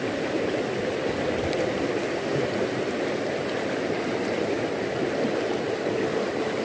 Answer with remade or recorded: recorded